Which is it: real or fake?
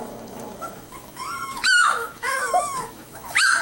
fake